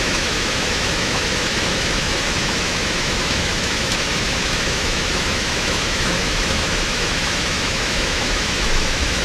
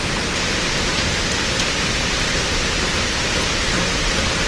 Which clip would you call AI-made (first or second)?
first